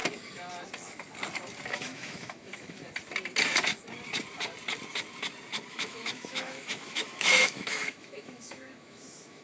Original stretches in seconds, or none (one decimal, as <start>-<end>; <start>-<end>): 0.0-1.7; 2.8-5.7